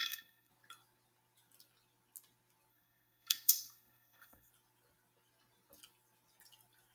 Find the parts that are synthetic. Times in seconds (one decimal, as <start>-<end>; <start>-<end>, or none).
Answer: 0.0-0.5; 2.7-4.5